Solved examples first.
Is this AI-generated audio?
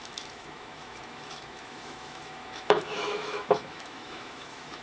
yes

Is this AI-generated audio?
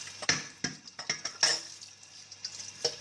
no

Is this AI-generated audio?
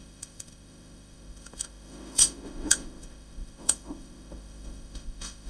yes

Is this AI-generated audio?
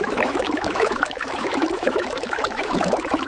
yes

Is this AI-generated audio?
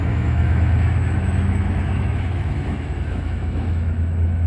yes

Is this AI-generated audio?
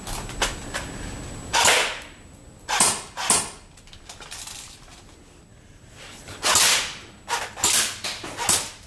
no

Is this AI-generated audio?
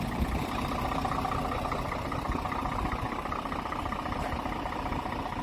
no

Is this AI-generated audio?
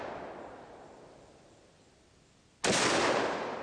no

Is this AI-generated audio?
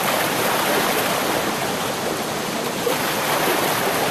no